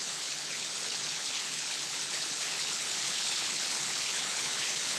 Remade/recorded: remade